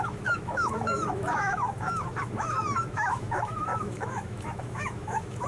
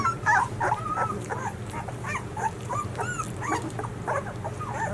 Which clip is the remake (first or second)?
first